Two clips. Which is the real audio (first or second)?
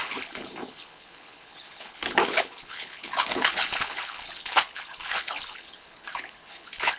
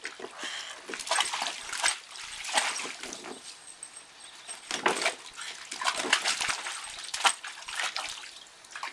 second